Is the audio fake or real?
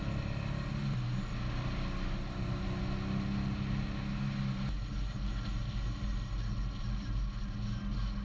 real